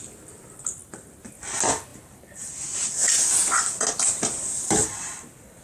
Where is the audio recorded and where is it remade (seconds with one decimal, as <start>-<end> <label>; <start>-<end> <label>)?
0.0-5.6 recorded